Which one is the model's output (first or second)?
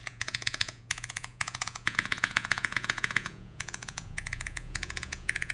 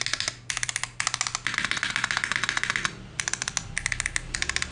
first